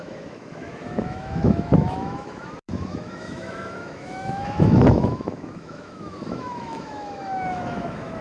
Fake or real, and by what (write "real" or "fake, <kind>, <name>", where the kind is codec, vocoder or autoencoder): fake, autoencoder, DAC-VAE